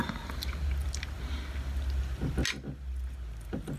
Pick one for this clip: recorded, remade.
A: recorded